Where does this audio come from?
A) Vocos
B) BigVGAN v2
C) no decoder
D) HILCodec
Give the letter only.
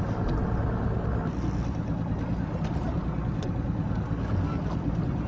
C